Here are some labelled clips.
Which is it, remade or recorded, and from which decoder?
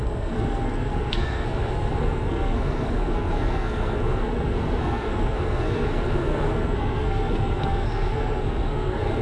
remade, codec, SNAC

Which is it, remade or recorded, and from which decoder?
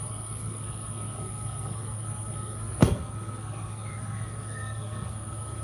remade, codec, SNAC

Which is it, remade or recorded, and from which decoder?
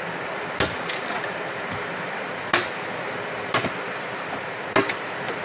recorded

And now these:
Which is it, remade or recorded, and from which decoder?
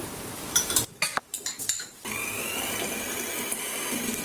remade, vocoder, BigVGAN v2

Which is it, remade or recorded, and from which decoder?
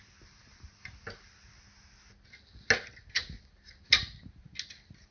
recorded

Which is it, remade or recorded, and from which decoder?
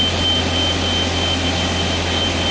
recorded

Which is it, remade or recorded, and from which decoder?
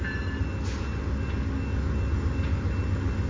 recorded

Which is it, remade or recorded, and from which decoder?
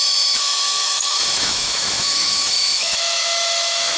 remade, autoencoder, DAC-VAE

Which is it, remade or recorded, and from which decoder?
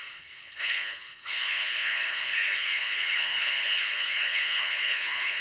remade, codec, HILCodec